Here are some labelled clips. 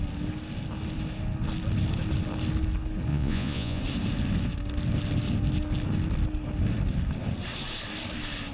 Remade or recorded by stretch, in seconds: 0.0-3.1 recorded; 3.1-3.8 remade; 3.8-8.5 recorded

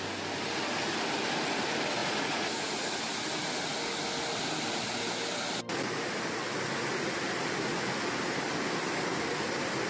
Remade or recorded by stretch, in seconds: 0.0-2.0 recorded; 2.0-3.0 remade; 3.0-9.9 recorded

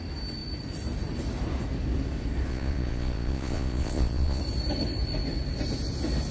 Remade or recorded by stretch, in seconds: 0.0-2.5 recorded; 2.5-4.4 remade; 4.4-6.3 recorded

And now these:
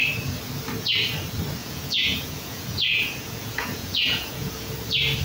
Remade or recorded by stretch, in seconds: 0.0-1.6 recorded; 1.6-4.7 remade; 4.7-5.2 recorded

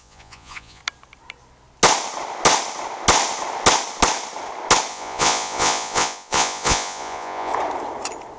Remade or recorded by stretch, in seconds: 0.0-0.8 remade; 0.8-4.9 recorded; 4.9-7.5 remade; 7.5-8.4 recorded

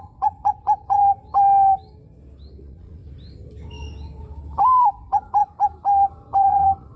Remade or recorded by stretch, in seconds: 0.0-1.0 remade; 1.0-2.6 recorded; 2.6-3.0 remade; 3.0-4.9 recorded; 4.9-5.4 remade; 5.4-6.4 recorded; 6.4-7.0 remade

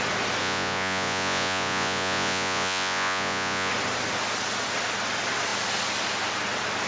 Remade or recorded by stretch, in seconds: 0.0-0.4 recorded; 0.4-3.7 remade; 3.7-6.9 recorded

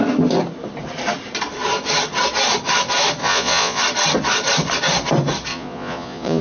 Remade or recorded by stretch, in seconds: 0.0-3.2 recorded; 3.2-3.8 remade; 3.8-5.5 recorded; 5.5-6.4 remade